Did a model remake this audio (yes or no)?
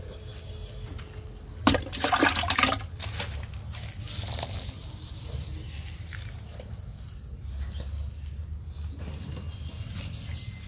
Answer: no